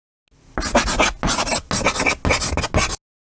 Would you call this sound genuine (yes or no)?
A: yes